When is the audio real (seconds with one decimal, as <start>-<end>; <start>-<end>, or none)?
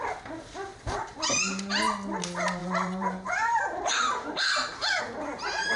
0.0-2.6; 5.0-5.8